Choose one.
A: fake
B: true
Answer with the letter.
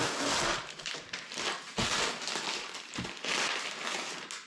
B